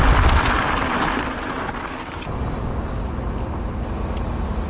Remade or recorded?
recorded